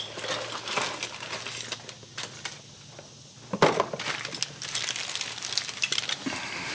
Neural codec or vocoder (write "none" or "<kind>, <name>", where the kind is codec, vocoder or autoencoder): none